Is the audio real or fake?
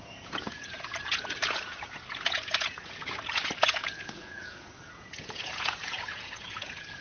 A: fake